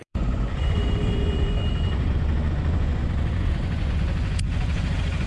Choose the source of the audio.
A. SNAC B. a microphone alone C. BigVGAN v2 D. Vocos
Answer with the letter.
D